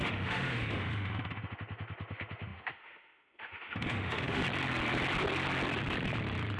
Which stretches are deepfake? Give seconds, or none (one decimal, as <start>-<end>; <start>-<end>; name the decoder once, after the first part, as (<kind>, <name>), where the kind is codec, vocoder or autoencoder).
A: 0.0-4.4 (autoencoder, DAC-VAE)